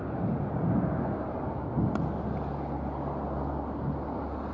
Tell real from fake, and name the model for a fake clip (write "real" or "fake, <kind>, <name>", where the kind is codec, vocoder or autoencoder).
real